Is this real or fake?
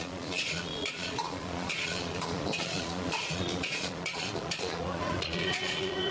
fake